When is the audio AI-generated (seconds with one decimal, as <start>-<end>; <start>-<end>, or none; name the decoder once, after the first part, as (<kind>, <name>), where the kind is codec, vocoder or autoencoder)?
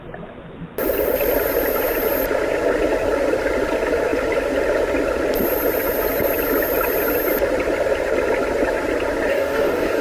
9.3-10.0 (codec, DAC)